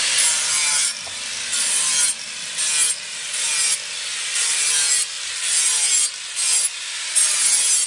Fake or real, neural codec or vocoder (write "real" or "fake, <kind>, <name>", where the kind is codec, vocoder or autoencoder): real